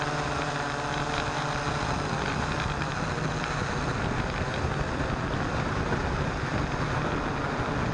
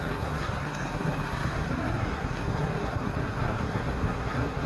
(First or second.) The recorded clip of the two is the first